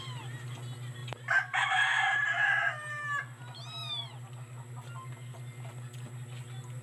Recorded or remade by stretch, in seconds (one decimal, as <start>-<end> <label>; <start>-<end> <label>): 0.0-6.8 recorded